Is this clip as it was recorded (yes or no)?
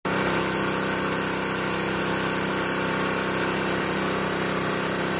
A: yes